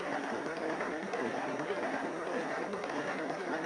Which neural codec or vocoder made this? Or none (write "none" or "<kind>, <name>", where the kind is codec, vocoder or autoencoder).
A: codec, SNAC